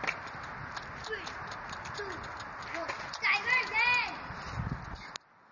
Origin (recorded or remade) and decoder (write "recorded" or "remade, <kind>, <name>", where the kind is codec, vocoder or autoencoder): recorded